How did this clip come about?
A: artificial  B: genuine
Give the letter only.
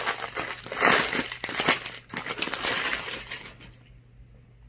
B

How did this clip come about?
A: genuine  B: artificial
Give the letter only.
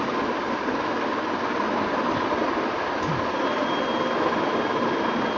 A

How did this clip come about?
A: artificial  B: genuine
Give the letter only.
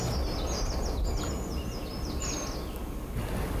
B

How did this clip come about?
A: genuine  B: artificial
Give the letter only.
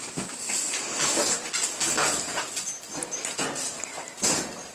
A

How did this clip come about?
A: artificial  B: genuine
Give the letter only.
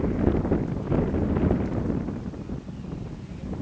B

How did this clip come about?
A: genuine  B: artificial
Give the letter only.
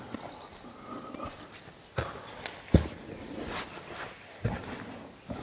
A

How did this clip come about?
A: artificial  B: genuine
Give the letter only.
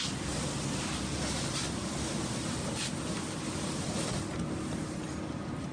B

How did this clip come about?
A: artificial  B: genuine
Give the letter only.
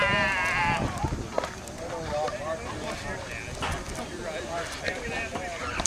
B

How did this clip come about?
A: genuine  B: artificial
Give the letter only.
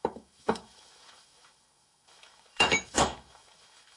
B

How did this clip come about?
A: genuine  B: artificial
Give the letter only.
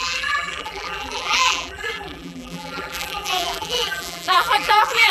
B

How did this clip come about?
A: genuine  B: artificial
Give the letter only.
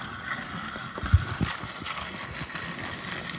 A